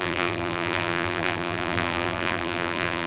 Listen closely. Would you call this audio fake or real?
fake